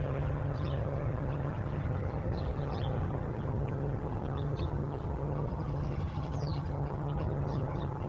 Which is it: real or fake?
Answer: fake